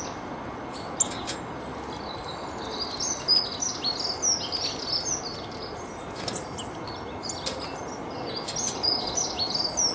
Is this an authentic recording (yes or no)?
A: yes